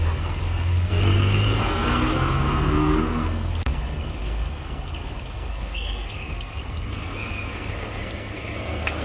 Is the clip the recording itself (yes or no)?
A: no